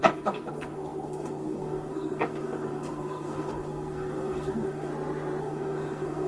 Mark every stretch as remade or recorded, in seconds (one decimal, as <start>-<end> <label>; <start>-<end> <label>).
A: 0.0-4.9 remade; 4.9-5.4 recorded; 5.4-6.3 remade